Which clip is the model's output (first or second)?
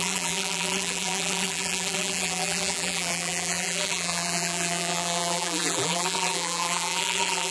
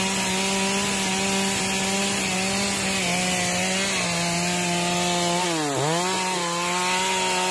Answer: first